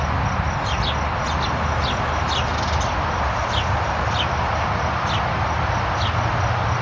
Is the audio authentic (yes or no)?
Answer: yes